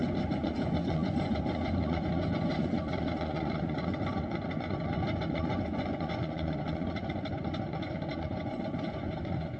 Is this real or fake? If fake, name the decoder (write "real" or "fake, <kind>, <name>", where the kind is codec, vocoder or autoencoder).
fake, vocoder, Vocos